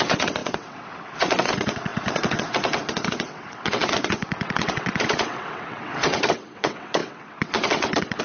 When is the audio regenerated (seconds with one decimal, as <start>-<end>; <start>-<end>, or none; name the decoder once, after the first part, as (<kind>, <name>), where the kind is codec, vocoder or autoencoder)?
0.0-8.2 (vocoder, WaveNeXt)